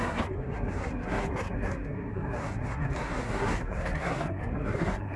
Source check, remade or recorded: remade